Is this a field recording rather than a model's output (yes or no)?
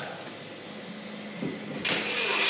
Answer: yes